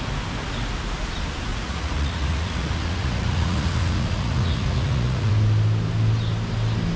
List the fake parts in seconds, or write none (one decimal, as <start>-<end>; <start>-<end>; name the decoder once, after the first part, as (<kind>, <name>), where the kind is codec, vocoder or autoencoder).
1.5-5.3 (vocoder, Vocos)